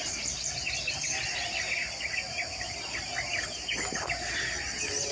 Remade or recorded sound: recorded